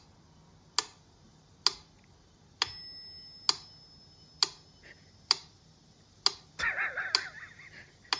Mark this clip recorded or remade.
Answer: recorded